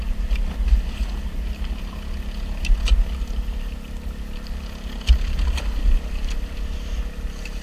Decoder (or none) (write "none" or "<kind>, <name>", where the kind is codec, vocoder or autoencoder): none